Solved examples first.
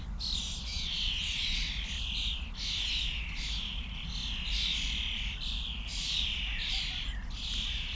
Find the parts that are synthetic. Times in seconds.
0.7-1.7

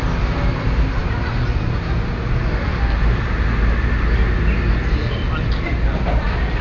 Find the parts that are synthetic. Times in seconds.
none

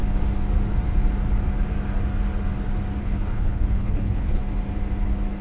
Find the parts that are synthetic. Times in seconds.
3.0-4.4

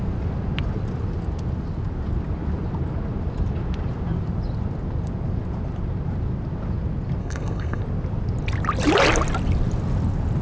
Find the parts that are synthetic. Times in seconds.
7.2-7.8

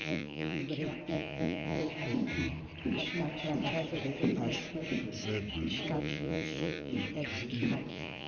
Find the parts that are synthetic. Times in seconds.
0.0-0.6; 1.1-1.8; 6.0-6.9; 7.9-8.3

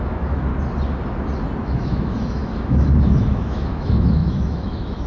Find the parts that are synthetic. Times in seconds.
0.0-0.5; 1.6-5.1